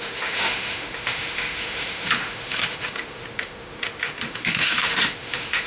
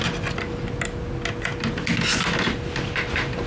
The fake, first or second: first